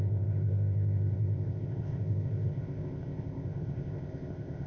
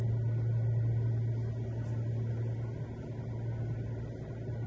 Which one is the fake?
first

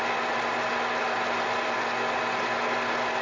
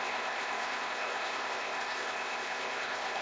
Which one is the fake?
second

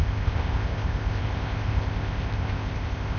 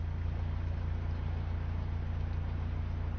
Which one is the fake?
first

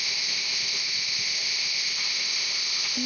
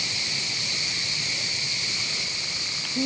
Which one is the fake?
first